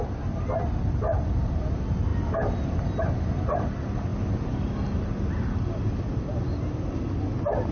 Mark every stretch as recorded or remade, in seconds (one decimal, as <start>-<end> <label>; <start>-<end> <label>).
0.0-7.7 recorded